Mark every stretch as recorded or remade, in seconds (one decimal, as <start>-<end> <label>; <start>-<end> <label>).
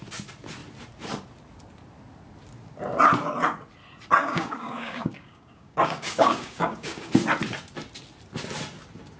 0.0-4.2 recorded; 4.2-7.1 remade; 7.1-9.2 recorded